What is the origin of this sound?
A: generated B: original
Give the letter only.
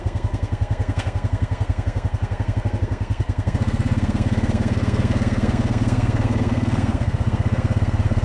A